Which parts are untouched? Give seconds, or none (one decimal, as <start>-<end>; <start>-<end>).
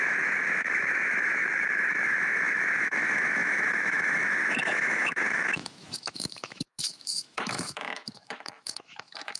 none